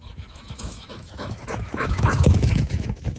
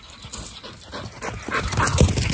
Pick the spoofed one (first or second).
first